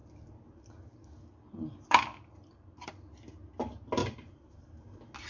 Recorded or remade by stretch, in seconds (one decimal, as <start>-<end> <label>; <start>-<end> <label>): 0.0-2.1 recorded; 2.1-2.9 remade; 2.9-4.0 recorded; 4.0-4.7 remade; 4.7-5.3 recorded